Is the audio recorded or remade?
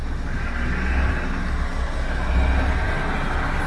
recorded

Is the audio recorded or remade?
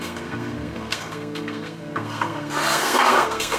remade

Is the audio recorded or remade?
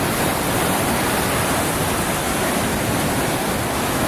recorded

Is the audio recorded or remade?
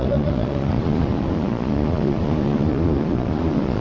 remade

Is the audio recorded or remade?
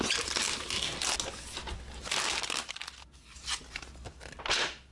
recorded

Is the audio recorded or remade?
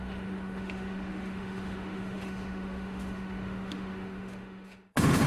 remade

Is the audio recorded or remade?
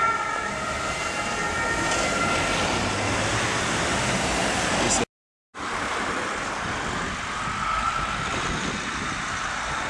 recorded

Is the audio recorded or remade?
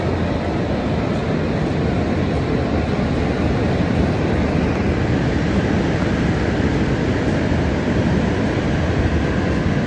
recorded